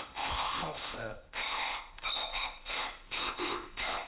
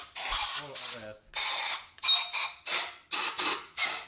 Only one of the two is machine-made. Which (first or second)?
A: first